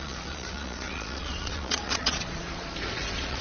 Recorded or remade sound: remade